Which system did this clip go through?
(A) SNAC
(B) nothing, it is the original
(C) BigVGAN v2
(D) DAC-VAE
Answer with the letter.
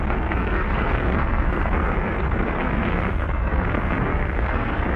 A